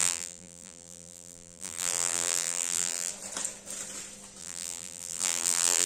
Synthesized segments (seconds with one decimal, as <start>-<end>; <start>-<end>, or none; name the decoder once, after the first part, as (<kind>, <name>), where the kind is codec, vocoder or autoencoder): 0.0-3.1 (vocoder, BigVGAN v2); 4.4-5.9